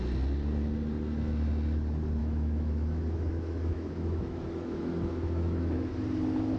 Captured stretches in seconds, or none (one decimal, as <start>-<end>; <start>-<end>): 0.0-2.2; 5.9-6.6